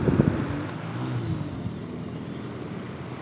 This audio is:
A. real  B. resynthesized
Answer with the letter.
A